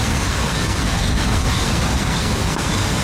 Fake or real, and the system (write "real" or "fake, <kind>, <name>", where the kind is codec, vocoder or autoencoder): fake, codec, SNAC